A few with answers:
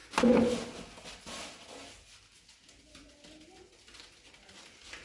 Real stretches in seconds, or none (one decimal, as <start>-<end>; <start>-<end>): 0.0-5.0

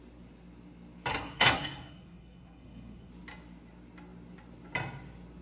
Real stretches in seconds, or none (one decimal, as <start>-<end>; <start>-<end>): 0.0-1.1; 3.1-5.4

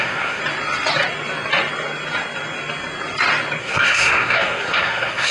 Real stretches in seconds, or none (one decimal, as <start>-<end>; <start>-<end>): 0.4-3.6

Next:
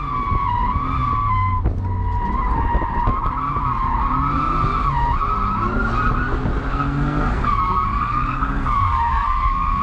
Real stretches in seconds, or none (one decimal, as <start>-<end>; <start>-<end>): 0.0-6.7